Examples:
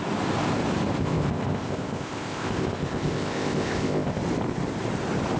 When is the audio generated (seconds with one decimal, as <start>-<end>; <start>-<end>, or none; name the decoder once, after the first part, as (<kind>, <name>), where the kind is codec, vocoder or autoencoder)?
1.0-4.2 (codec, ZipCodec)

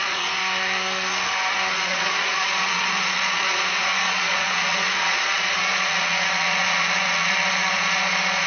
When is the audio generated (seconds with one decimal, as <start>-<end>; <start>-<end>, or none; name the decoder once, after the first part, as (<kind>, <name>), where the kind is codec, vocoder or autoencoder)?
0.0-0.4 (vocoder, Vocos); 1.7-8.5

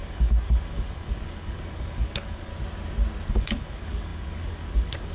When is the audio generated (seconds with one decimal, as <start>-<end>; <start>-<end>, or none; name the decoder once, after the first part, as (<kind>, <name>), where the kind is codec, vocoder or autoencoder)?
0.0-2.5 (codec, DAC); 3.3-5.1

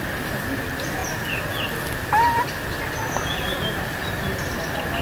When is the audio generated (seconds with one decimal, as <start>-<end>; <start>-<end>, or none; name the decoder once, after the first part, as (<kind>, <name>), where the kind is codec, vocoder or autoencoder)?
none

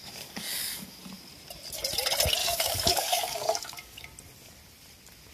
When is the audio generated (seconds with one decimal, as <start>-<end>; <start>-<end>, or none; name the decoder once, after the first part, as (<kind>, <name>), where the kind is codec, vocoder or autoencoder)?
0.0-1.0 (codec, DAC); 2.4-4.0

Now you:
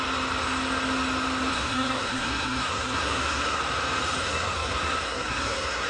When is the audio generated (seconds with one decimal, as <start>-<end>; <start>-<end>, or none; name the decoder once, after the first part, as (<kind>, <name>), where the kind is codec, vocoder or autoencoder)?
1.5-3.6 (codec, SNAC); 4.2-5.9

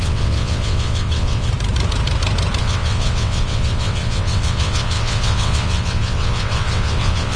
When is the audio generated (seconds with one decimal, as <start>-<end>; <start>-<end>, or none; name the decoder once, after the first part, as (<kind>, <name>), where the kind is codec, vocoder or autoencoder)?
0.0-1.5 (vocoder, WaveNeXt); 2.6-7.4